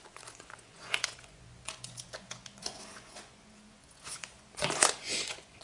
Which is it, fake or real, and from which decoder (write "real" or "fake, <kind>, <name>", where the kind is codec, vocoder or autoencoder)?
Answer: fake, vocoder, Vocos